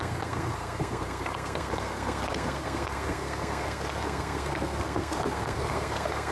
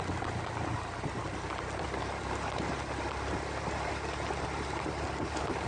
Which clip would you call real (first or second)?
second